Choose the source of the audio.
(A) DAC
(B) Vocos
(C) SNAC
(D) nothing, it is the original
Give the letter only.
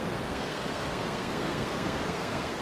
C